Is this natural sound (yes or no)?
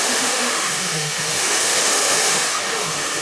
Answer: no